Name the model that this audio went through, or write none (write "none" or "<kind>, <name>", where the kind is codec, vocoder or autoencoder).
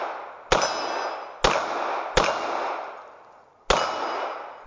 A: none